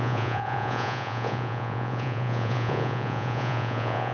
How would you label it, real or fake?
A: fake